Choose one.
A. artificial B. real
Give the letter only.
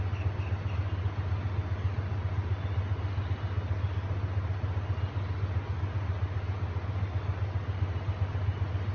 B